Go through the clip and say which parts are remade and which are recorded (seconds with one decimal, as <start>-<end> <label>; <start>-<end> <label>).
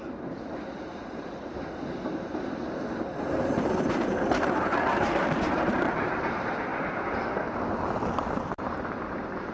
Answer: 0.0-6.7 remade; 6.7-8.5 recorded; 8.5-9.5 remade